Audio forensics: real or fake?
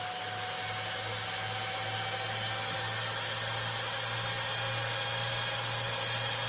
real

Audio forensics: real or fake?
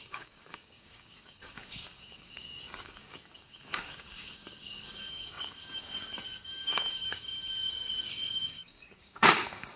fake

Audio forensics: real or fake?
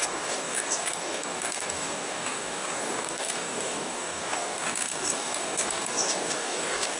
fake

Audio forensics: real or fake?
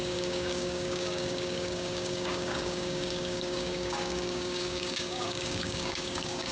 fake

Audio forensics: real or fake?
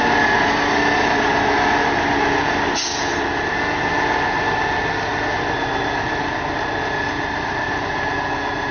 real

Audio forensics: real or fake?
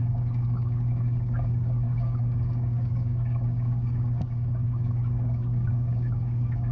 fake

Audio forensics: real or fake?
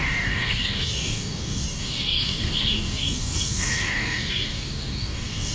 fake